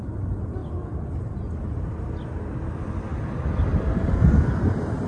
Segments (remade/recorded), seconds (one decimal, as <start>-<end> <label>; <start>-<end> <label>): 0.0-5.1 recorded